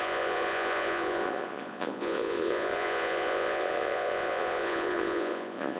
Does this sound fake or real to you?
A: fake